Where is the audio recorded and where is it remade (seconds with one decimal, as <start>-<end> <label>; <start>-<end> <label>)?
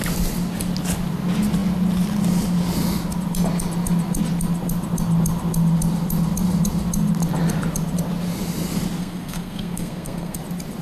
0.0-9.0 recorded; 9.0-10.4 remade; 10.4-10.8 recorded